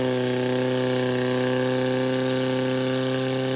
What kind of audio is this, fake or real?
real